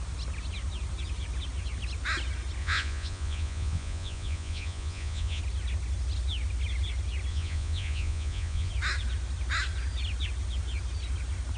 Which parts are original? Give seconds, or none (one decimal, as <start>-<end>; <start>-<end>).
0.0-2.6; 5.4-7.3; 8.7-11.6

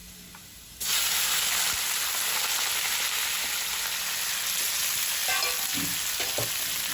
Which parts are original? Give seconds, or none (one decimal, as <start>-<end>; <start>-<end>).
0.0-6.9

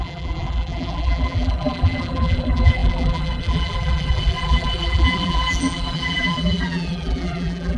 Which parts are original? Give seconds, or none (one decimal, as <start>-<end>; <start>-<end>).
none